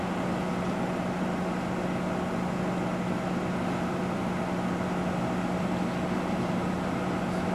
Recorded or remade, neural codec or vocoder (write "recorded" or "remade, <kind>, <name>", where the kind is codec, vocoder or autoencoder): recorded